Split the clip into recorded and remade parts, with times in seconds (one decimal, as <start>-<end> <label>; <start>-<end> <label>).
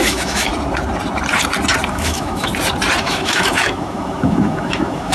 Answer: 0.0-0.5 remade; 0.5-1.9 recorded; 1.9-2.5 remade; 2.5-3.0 recorded; 3.0-5.1 remade